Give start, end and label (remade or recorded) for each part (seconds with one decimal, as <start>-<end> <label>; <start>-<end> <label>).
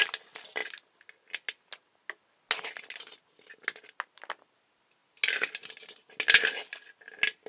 0.0-7.5 recorded